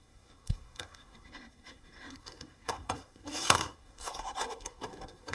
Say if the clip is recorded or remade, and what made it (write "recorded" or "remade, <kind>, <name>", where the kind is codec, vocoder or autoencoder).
remade, codec, SNAC